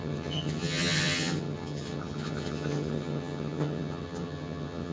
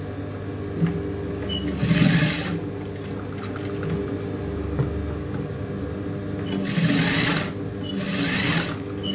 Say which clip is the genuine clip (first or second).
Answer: second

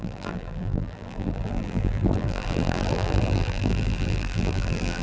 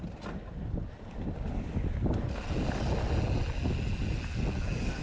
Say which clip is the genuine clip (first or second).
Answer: second